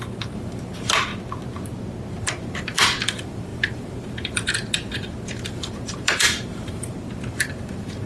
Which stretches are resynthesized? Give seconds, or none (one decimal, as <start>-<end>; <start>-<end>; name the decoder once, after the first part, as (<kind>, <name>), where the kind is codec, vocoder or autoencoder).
0.0-1.1 (vocoder, BigVGAN v2); 2.1-8.1